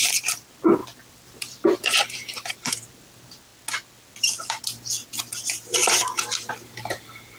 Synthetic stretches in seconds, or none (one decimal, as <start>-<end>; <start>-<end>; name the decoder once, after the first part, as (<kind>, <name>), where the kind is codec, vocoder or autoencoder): 0.0-3.5 (vocoder, BigVGAN v2); 6.5-7.4